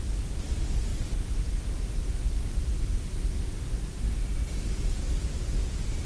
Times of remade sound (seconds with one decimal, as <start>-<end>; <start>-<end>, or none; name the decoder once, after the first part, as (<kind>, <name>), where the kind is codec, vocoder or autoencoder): none